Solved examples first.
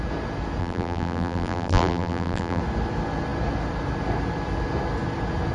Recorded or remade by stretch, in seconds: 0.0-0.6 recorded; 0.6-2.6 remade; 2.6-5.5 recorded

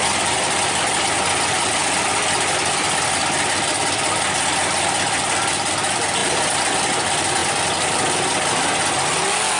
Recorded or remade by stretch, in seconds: 0.0-6.2 recorded; 6.2-6.9 remade; 6.9-7.4 recorded; 7.4-8.5 remade; 8.5-9.6 recorded

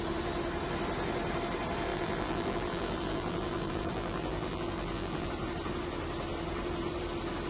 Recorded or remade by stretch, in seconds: 0.0-1.9 recorded; 1.9-5.3 remade; 5.3-7.5 recorded

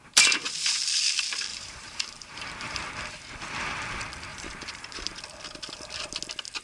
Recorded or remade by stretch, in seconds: 0.0-1.5 recorded; 1.5-2.8 remade; 2.8-4.3 recorded; 4.3-5.2 remade; 5.2-6.6 recorded

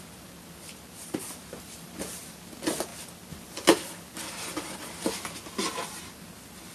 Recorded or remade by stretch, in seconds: 0.0-1.4 recorded; 1.4-2.2 remade; 2.2-6.7 recorded

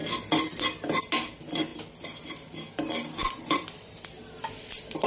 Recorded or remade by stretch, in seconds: 0.0-5.1 recorded